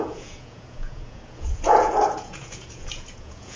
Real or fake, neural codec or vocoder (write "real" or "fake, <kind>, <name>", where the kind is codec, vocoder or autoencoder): fake, vocoder, Vocos